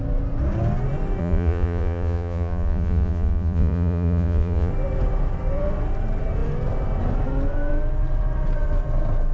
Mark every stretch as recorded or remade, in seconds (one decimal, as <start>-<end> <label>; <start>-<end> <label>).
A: 0.0-1.2 recorded; 1.2-4.7 remade; 4.7-9.3 recorded